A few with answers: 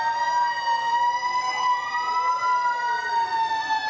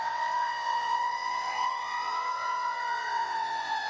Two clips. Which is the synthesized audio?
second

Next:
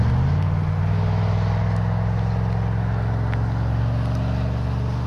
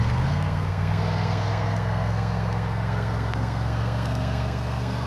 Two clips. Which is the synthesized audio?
second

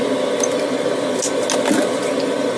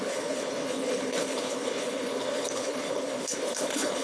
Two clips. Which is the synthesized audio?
second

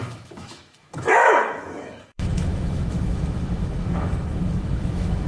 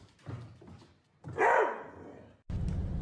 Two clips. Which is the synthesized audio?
first